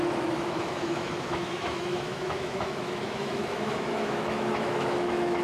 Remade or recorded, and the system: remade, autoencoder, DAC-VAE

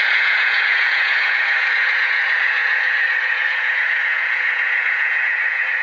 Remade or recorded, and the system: remade, vocoder, Vocos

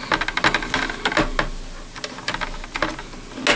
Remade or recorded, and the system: recorded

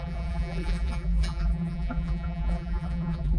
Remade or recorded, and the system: remade, vocoder, BigVGAN v2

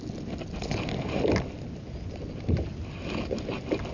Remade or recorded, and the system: recorded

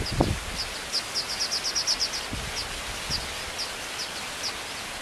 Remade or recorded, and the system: recorded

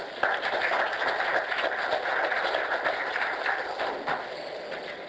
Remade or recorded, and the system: recorded